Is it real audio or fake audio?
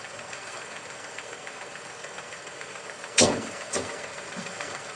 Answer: fake